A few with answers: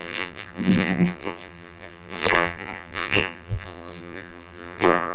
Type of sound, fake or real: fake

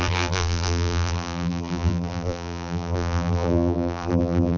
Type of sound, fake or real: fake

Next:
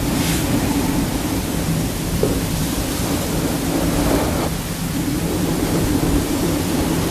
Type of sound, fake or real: fake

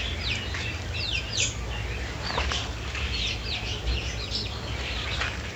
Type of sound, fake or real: real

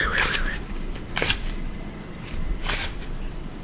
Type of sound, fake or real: fake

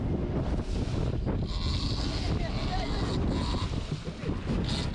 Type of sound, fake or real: real